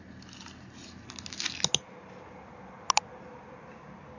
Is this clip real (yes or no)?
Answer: yes